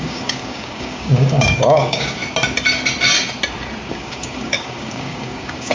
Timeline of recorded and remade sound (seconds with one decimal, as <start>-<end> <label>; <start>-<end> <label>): 0.0-2.2 remade; 2.2-3.9 recorded; 3.9-5.7 remade